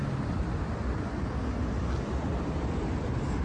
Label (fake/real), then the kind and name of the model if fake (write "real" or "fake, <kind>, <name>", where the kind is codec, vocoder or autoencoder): real